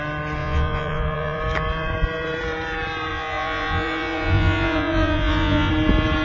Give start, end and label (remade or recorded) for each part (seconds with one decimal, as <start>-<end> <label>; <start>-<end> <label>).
0.0-0.4 recorded; 0.4-1.4 remade; 1.4-3.1 recorded; 3.1-5.7 remade; 5.7-6.2 recorded

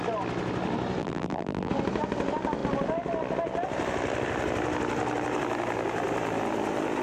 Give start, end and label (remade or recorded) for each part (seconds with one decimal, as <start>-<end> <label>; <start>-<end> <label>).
0.0-1.0 recorded; 1.0-1.7 remade; 1.7-7.0 recorded

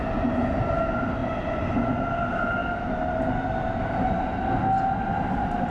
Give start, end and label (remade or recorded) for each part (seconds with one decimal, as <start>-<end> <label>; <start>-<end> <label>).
0.0-5.7 recorded

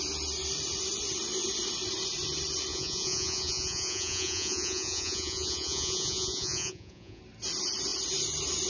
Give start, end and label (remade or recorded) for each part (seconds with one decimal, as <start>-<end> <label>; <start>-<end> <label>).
0.0-2.7 recorded; 2.7-7.2 remade; 7.2-8.7 recorded

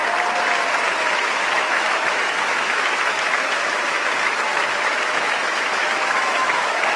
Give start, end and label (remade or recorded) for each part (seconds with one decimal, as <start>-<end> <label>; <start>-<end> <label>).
0.0-0.9 recorded; 0.9-7.0 remade

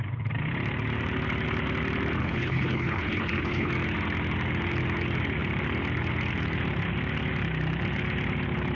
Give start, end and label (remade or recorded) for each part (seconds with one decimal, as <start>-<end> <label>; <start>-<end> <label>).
0.0-2.2 recorded; 2.2-3.7 remade; 3.7-8.7 recorded